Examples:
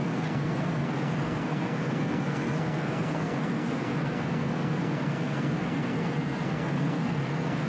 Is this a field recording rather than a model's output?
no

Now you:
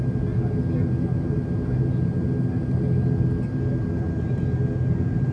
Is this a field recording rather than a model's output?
yes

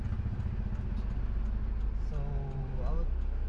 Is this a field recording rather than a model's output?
yes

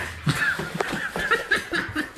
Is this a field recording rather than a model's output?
yes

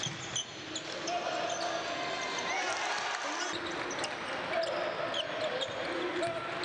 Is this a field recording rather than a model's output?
yes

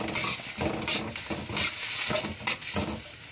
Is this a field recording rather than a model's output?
yes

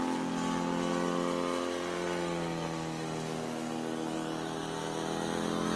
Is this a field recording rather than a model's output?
yes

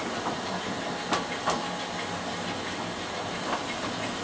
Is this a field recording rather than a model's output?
yes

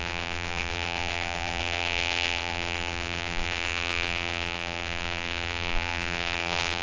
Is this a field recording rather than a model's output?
no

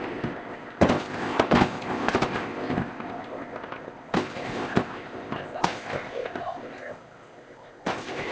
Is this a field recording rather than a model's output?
no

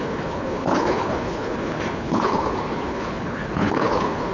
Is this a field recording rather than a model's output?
no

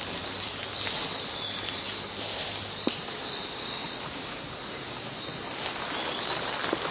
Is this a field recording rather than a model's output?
yes